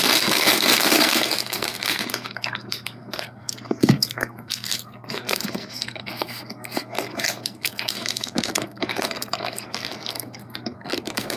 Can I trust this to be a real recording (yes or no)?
no